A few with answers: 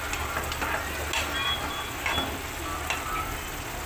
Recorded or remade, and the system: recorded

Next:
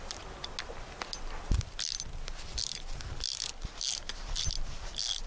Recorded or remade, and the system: recorded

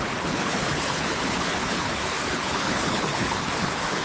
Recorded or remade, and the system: remade, codec, HILCodec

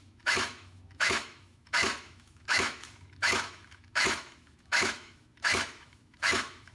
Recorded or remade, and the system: remade, autoencoder, DAC-VAE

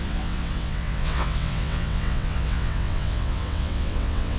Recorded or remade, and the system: remade, vocoder, WaveNeXt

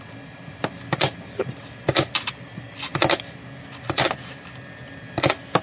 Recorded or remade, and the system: recorded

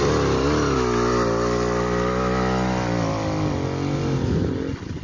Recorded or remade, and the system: recorded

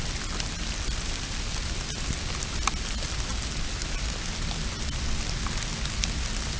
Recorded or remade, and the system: recorded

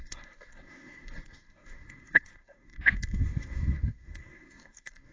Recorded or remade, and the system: remade, codec, SNAC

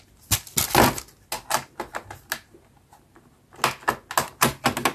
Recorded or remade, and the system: recorded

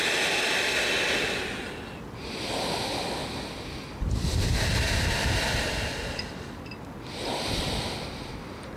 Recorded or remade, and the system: recorded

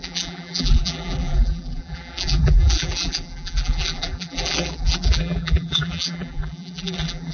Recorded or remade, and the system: remade, vocoder, BigVGAN v2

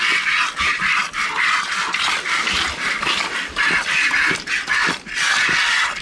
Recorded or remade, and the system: recorded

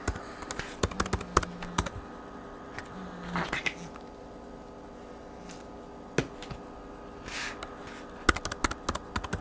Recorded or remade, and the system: recorded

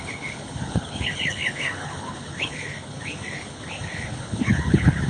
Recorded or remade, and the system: remade, codec, HILCodec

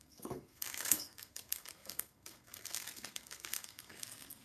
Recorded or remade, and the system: remade, codec, SNAC